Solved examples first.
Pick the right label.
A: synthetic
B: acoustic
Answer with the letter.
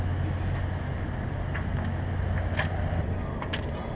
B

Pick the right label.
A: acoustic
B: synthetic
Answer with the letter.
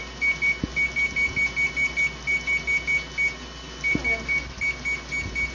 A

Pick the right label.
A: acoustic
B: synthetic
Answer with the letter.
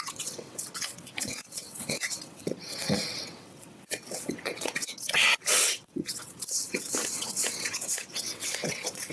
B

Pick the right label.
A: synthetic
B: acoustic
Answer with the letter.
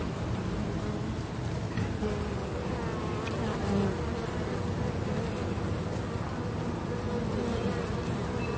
B